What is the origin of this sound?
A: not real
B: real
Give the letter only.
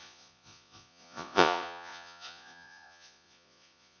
A